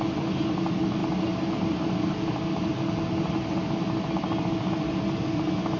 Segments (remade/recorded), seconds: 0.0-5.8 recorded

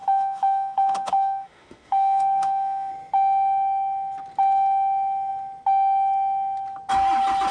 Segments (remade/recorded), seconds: 0.0-2.9 remade; 2.9-7.5 recorded

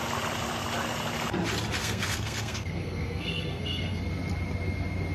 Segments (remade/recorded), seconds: 0.0-1.8 recorded; 1.8-4.0 remade; 4.0-5.1 recorded

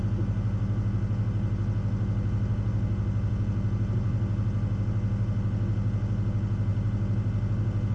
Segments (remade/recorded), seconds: 0.0-7.9 recorded

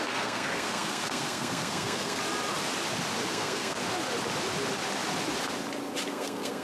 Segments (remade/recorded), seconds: 0.0-2.2 remade; 2.2-3.3 recorded; 3.3-3.8 remade; 3.8-6.1 recorded; 6.1-6.6 remade

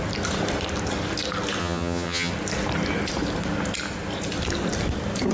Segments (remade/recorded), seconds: 0.0-1.6 recorded; 1.6-2.3 remade; 2.3-5.3 recorded